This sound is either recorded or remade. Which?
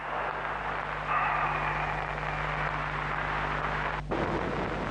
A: recorded